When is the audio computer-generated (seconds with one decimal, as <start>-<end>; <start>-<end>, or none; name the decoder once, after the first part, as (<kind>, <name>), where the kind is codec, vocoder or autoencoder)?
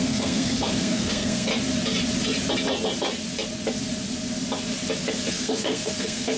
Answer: 0.0-1.5 (codec, SNAC); 5.3-6.4